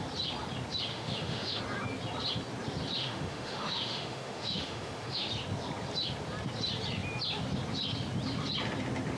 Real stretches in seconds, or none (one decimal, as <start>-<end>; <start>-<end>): 0.0-0.9; 1.6-3.0; 5.3-9.2